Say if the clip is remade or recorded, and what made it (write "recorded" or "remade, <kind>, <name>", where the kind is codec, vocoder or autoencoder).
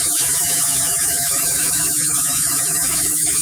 remade, autoencoder, DAC-VAE